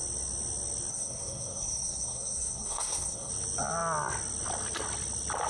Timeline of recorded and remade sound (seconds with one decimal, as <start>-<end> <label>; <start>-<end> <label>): 0.0-0.9 recorded; 0.9-3.3 remade; 3.3-5.5 recorded